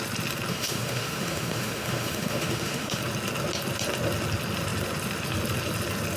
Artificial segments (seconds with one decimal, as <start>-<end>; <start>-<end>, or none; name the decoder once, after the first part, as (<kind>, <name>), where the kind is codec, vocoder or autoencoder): 0.5-3.0 (autoencoder, DAC-VAE)